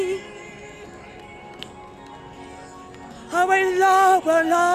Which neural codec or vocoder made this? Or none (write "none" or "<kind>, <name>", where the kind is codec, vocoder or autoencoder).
none